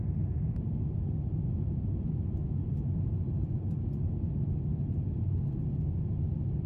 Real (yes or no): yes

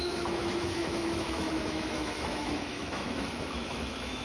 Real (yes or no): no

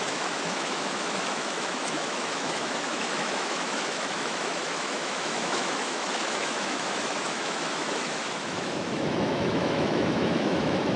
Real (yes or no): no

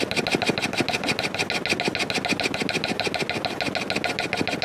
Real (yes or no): yes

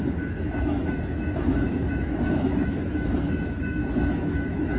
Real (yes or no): no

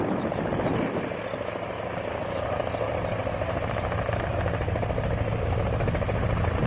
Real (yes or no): yes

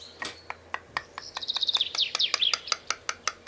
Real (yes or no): yes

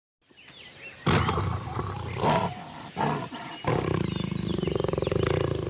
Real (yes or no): yes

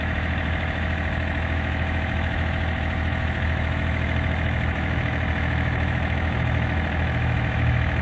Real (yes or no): no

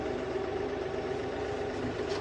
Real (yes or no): yes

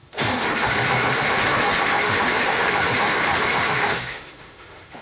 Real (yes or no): no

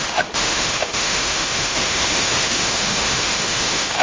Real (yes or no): no